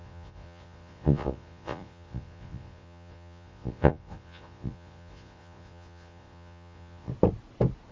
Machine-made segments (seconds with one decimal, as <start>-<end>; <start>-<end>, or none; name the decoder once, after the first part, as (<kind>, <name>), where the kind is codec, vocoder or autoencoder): 0.0-7.1 (vocoder, Vocos)